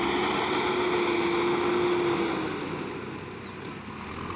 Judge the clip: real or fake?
real